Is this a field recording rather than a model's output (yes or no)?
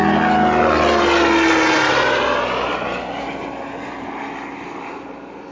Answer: yes